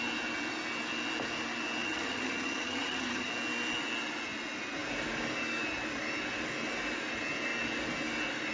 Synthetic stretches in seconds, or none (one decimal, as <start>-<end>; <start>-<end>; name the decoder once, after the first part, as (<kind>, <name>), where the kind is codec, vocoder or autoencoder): 1.8-3.3 (vocoder, HiFi-GAN)